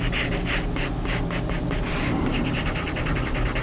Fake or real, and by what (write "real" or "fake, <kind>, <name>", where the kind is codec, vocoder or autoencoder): real